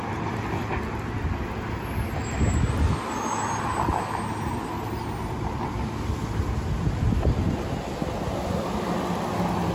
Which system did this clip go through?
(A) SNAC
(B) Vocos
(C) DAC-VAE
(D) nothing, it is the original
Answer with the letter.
D